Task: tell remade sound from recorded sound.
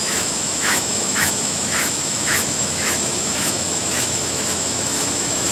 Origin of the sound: remade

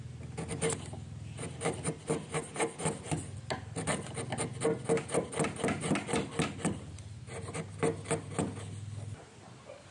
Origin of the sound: recorded